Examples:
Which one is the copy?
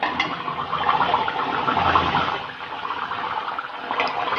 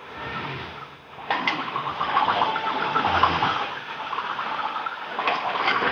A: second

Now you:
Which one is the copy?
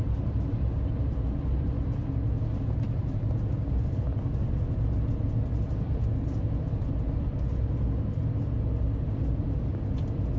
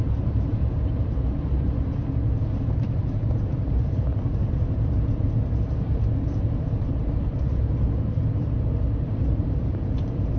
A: second